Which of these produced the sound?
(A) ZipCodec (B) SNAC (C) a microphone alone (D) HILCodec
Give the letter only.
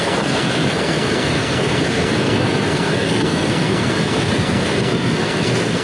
B